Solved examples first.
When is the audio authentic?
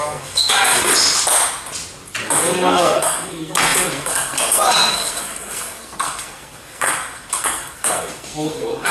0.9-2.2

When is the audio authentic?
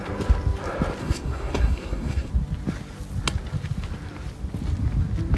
0.0-1.0; 2.3-5.4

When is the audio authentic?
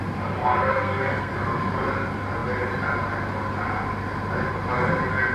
0.0-0.4; 1.3-5.3